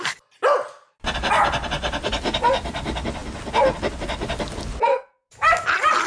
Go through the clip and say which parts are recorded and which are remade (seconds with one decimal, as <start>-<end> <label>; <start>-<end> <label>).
0.0-6.1 recorded